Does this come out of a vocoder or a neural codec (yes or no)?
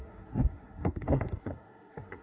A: yes